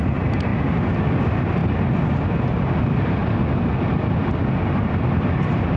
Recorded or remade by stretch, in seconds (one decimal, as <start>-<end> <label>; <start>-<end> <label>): 0.0-0.5 remade; 0.5-1.2 recorded; 1.2-1.6 remade; 1.6-2.8 recorded; 2.8-5.8 remade